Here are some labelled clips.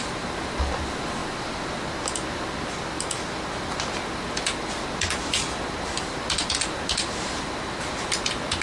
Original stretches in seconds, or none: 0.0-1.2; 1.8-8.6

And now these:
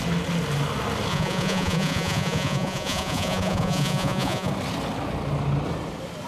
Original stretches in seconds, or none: 0.0-1.1; 4.5-6.3

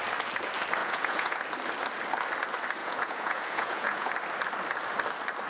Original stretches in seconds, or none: 0.0-0.8; 1.4-2.8; 4.1-5.5

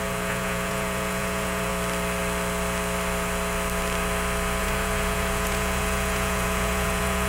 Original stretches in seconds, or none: 1.7-4.6

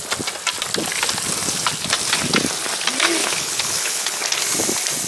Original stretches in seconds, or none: 0.0-3.2; 4.2-5.1

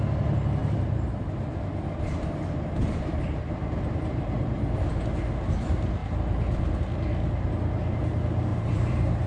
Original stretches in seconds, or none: 0.0-0.6; 1.4-2.8; 4.9-8.5

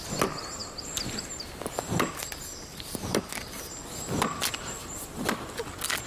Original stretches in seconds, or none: 0.0-0.6; 2.2-2.7; 3.6-4.8; 5.6-6.1